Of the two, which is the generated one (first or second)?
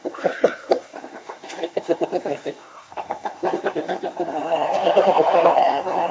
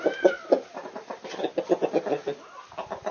first